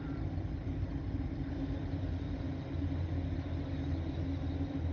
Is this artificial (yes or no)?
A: no